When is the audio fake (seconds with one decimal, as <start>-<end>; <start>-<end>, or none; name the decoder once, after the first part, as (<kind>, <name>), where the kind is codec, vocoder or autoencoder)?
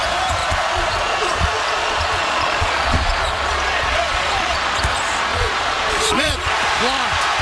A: 0.4-4.8 (vocoder, Vocos); 5.3-6.5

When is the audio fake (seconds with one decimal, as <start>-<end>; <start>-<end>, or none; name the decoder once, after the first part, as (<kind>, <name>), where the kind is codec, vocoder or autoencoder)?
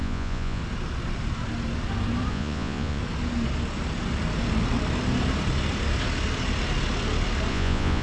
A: 0.0-0.6 (vocoder, Vocos); 2.3-3.0; 7.5-8.0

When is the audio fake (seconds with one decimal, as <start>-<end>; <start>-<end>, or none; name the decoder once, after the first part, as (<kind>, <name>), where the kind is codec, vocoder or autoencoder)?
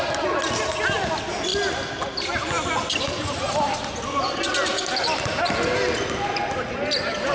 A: none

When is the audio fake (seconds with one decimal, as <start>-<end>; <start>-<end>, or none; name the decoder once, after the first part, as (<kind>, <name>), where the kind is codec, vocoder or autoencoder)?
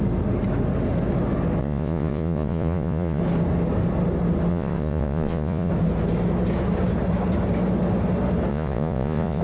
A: 1.6-3.2 (vocoder, Vocos); 4.5-5.7; 8.5-9.4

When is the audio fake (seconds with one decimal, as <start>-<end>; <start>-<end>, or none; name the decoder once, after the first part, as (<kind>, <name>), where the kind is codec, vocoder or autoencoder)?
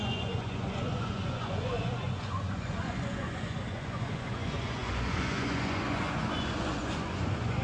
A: 0.0-7.6 (vocoder, Vocos)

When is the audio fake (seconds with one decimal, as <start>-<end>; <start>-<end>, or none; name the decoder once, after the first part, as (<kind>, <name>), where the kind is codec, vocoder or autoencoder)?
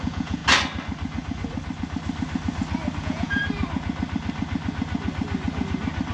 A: 0.0-0.4 (vocoder, Vocos); 3.0-3.4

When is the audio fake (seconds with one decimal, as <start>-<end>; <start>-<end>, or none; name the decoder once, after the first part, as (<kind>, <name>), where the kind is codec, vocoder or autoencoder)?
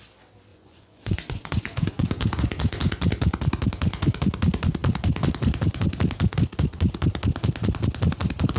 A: 0.5-2.4 (vocoder, Vocos)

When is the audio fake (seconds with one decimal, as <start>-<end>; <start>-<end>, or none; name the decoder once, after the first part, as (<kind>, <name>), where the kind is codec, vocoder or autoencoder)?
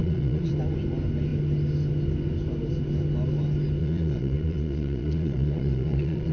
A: 0.0-0.5 (vocoder, Vocos); 3.8-6.3